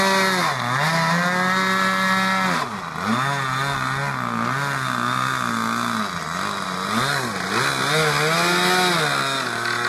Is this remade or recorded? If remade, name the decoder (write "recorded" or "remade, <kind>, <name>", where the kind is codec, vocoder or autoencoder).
recorded